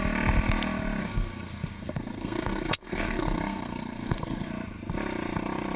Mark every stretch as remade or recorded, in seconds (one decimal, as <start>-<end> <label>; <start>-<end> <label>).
0.0-1.0 recorded; 1.0-4.5 remade; 4.5-5.8 recorded